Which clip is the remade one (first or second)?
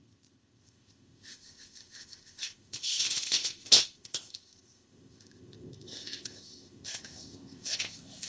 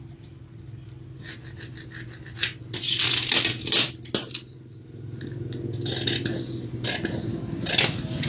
first